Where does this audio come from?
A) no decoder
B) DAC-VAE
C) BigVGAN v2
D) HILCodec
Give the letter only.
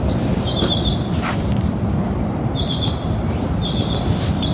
C